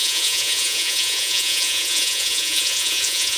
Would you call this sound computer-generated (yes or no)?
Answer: yes